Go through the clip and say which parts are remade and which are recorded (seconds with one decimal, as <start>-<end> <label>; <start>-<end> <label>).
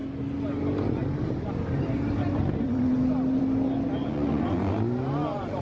0.0-4.0 recorded; 4.0-4.7 remade; 4.7-5.6 recorded